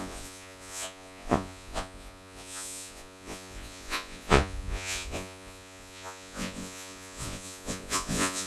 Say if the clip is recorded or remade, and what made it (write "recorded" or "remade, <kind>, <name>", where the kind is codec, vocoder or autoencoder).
remade, vocoder, Vocos